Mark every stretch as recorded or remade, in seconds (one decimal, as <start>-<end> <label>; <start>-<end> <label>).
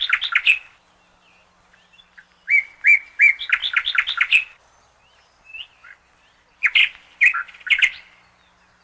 0.0-8.8 recorded